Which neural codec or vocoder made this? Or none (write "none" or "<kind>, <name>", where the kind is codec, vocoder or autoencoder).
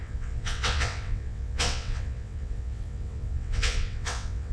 vocoder, WaveNeXt